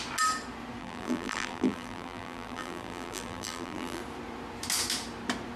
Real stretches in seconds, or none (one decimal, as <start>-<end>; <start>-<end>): 0.0-0.8; 4.0-5.6